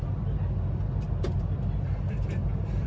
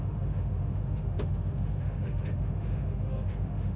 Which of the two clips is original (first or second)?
first